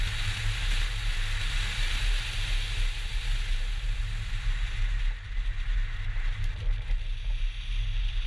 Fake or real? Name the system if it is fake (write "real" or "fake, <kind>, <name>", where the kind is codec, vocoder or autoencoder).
real